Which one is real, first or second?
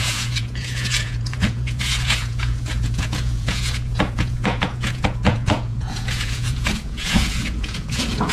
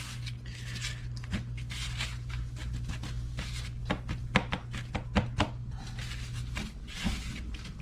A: second